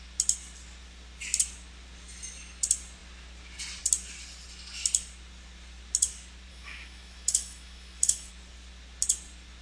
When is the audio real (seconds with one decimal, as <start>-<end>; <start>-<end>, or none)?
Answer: 0.0-6.5; 8.3-9.6